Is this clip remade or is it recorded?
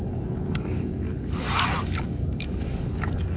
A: remade